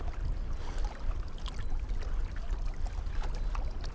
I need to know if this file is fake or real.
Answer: real